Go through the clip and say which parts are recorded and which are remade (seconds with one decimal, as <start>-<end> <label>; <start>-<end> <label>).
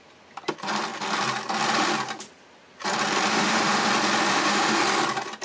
0.0-3.3 recorded; 3.3-3.9 remade; 3.9-4.3 recorded; 4.3-4.8 remade; 4.8-5.4 recorded